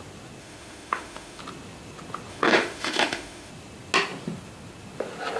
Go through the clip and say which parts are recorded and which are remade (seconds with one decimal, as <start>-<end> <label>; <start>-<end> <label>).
0.0-0.4 recorded; 0.4-1.4 remade; 1.4-2.3 recorded; 2.3-3.5 remade; 3.5-5.4 recorded